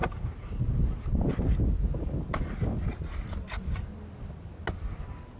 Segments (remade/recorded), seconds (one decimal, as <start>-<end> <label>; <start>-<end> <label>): 0.0-5.4 recorded